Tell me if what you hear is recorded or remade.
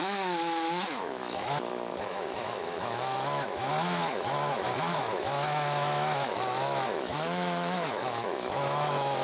remade